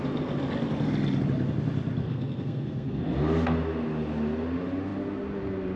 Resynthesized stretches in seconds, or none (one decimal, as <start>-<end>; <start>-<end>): 2.0-3.0